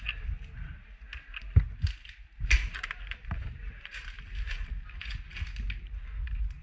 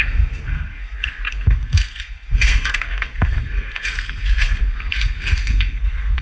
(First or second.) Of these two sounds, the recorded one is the first